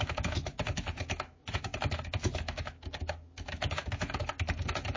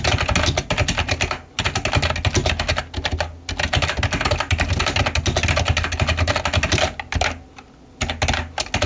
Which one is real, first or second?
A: second